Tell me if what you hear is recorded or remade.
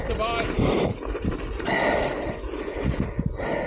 recorded